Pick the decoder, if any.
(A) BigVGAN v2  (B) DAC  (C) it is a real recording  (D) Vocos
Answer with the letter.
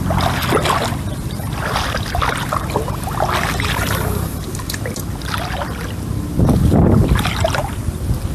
C